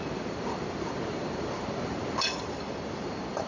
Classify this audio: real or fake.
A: fake